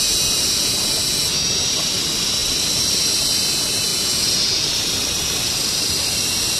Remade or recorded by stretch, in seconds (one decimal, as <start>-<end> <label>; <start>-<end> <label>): 0.0-3.9 recorded; 3.9-4.6 remade; 4.6-6.6 recorded

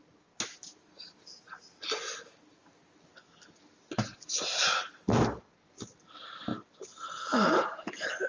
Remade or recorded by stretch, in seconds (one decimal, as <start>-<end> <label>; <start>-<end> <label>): 0.0-5.1 recorded; 5.1-6.0 remade; 6.0-6.5 recorded; 6.5-8.3 remade

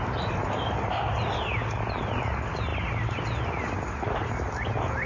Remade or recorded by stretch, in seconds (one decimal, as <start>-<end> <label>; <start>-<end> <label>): 0.0-0.4 recorded; 0.4-1.1 remade; 1.1-5.1 recorded